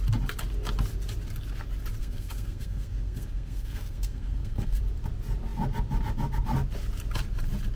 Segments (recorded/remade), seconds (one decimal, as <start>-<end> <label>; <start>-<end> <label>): 0.0-2.0 recorded; 2.0-4.8 remade; 4.8-7.8 recorded